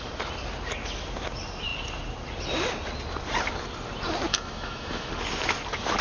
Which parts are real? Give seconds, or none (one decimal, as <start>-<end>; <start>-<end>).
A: 0.0-4.3; 5.1-6.0